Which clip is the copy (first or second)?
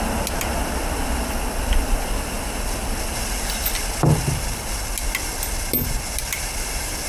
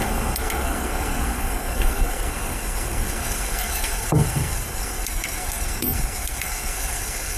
second